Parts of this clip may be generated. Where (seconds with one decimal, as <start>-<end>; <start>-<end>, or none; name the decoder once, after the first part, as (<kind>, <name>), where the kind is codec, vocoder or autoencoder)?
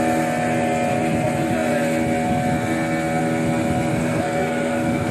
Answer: 3.9-5.1 (codec, SNAC)